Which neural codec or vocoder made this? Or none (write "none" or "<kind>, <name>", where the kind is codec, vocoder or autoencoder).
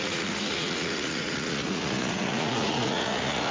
vocoder, Vocos